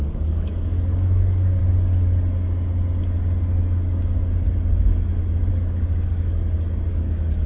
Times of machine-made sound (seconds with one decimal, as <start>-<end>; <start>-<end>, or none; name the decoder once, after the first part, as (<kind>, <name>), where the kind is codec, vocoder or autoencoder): 0.0-1.6 (codec, DAC); 5.5-6.4; 6.9-7.5